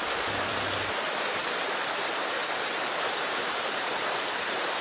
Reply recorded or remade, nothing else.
remade